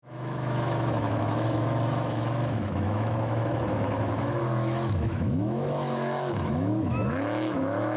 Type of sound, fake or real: fake